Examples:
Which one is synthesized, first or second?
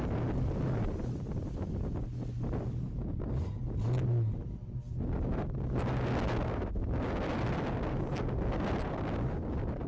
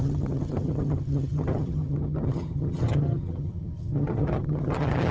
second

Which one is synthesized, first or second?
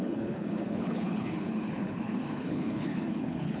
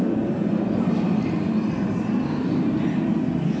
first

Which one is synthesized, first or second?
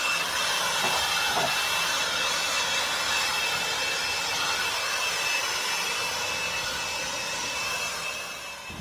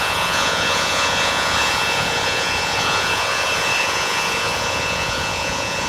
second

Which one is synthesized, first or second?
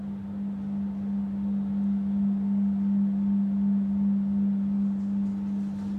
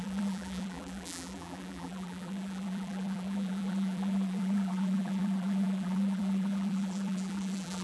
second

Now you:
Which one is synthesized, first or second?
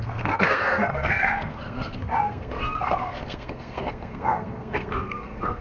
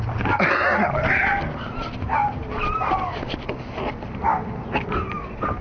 first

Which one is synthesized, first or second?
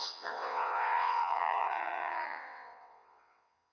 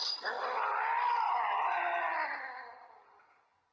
first